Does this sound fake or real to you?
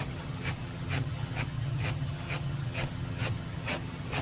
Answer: fake